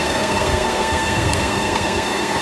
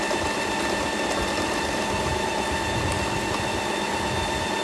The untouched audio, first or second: second